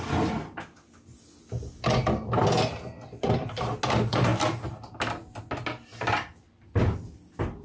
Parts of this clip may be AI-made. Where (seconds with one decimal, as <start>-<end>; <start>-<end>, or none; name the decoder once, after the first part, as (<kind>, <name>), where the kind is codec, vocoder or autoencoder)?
none